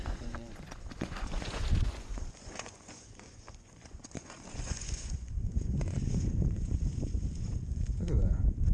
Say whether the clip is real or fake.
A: fake